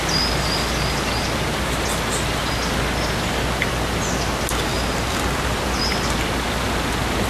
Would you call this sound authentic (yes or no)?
yes